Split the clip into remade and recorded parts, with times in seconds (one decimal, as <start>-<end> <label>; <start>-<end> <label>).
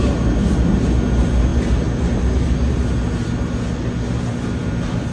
0.0-5.1 recorded